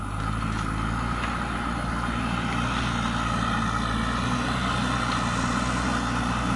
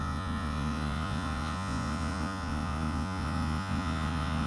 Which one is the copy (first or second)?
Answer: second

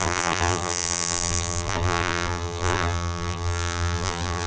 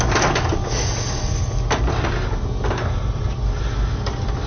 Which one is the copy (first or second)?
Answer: first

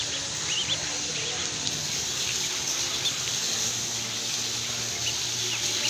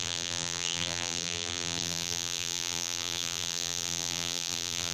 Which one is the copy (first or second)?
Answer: second